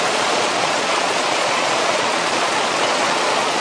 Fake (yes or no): yes